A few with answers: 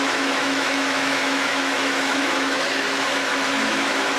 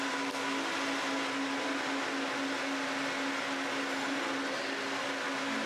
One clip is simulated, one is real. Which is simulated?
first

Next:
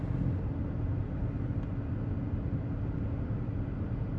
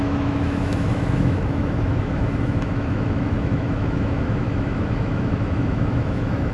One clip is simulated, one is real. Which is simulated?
second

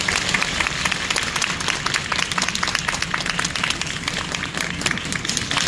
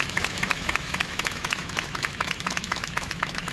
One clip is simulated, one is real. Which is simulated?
second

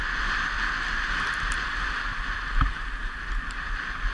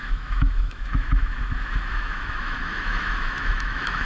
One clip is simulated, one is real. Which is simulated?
second